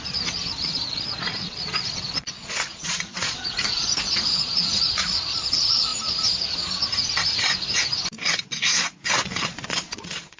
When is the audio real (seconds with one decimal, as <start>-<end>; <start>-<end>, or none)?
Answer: 5.9-8.4